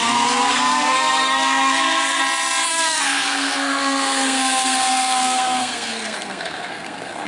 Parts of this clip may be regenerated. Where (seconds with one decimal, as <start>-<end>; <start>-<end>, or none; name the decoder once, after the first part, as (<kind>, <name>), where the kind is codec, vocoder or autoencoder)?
0.0-2.2 (codec, SNAC); 2.7-7.3